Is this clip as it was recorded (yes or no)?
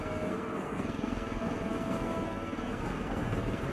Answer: no